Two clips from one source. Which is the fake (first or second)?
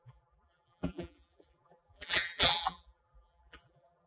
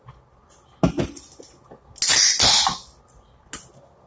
first